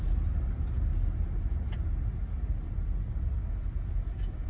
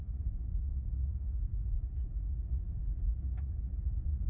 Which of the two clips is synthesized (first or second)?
second